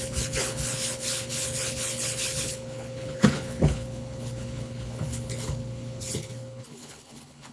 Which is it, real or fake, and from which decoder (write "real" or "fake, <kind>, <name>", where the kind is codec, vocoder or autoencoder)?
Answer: fake, codec, HILCodec